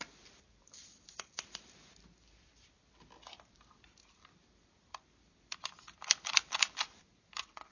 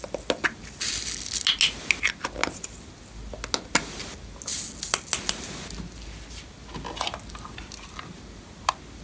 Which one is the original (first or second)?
second